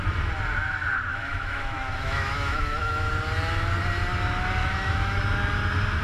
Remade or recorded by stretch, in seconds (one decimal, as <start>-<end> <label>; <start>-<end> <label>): 0.0-1.1 recorded; 1.1-3.1 remade; 3.1-4.6 recorded; 4.6-5.2 remade; 5.2-6.0 recorded